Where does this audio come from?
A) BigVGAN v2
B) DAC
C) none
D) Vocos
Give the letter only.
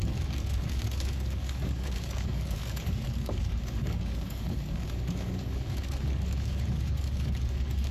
B